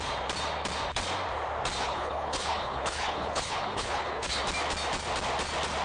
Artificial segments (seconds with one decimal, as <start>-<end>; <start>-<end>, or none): 1.8-4.4